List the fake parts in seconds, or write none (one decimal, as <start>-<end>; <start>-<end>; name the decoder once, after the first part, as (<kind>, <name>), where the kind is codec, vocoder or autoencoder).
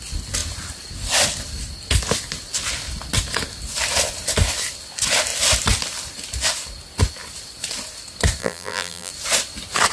8.4-9.1 (vocoder, BigVGAN v2)